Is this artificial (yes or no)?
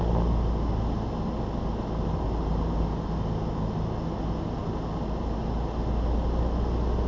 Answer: no